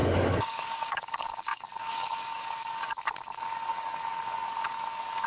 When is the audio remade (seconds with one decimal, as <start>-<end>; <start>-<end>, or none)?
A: 0.0-5.3